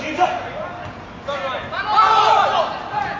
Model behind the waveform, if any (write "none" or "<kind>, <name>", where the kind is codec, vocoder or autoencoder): none